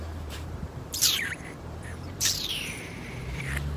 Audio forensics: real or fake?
fake